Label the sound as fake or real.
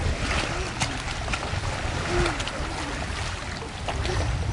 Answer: real